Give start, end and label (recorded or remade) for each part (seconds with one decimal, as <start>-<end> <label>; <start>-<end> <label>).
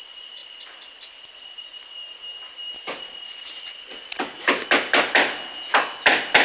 0.0-4.6 remade; 4.6-6.4 recorded